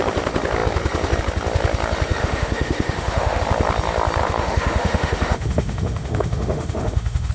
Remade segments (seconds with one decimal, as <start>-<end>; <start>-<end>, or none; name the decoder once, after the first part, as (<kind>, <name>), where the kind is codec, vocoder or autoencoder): 2.2-3.4 (autoencoder, DAC-VAE); 4.2-7.3